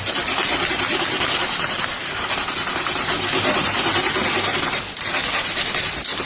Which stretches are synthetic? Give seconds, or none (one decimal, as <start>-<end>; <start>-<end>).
none